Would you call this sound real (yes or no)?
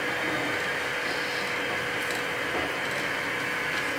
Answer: yes